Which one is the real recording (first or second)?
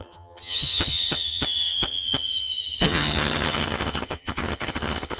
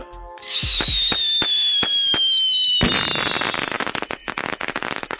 second